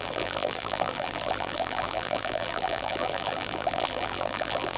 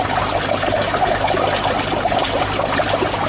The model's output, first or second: first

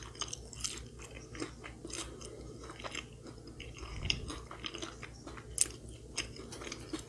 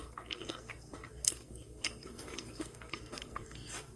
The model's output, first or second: second